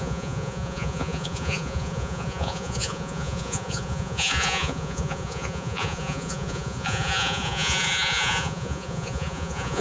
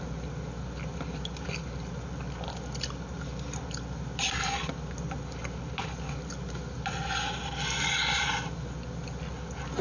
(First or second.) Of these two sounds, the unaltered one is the second